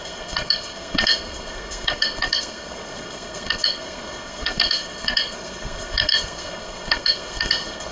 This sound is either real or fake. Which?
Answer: fake